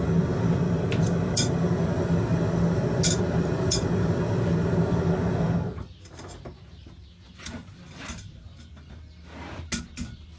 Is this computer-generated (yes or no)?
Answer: no